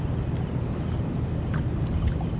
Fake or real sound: real